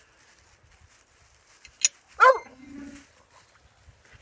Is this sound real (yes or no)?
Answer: yes